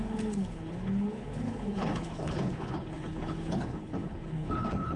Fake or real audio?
fake